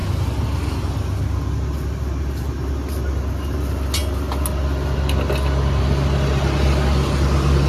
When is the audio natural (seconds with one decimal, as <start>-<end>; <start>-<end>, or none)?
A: 0.0-7.7